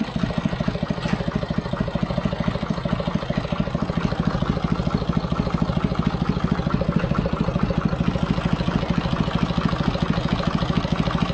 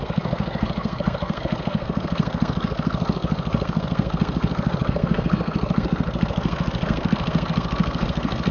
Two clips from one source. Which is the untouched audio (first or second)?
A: first